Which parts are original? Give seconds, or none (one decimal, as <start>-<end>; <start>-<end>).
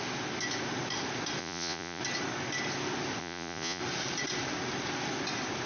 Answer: 0.0-1.4; 2.0-3.2; 3.8-5.7